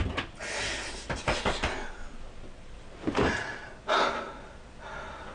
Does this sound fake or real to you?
real